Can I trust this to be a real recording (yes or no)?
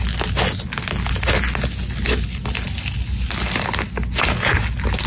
yes